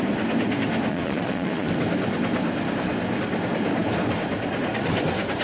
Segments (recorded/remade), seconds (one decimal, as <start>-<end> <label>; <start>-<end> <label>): 0.0-0.9 recorded; 0.9-1.7 remade; 1.7-5.4 recorded

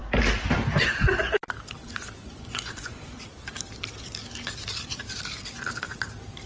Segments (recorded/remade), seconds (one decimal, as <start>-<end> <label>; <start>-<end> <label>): 0.0-1.8 recorded; 1.8-3.2 remade; 3.2-6.5 recorded

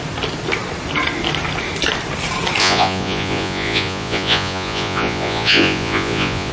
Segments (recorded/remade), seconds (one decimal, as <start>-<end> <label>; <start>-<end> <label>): 0.0-2.6 recorded; 2.6-6.5 remade

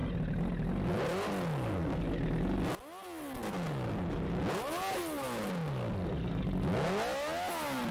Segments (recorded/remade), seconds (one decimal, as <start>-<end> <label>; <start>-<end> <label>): 0.0-7.9 recorded